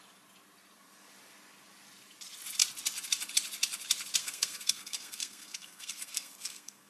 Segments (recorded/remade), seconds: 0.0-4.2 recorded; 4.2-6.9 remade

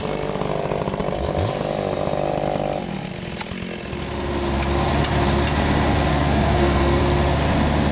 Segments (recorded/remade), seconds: 0.0-6.1 recorded; 6.1-7.0 remade; 7.0-7.9 recorded

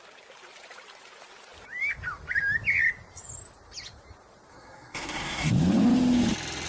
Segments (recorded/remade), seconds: 0.0-4.5 recorded; 4.5-5.5 remade; 5.5-6.7 recorded

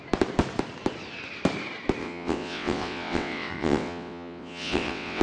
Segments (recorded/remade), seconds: 0.0-2.0 recorded; 2.0-5.2 remade